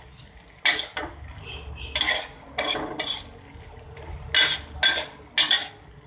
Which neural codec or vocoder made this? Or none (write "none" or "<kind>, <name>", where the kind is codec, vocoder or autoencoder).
none